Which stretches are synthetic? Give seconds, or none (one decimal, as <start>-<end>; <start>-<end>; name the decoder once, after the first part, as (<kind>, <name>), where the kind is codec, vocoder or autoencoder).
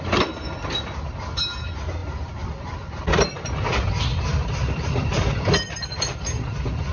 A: 2.0-3.0 (vocoder, BigVGAN v2); 4.1-6.2